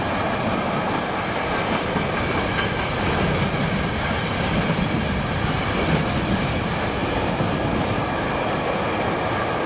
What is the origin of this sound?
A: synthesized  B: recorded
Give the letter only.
B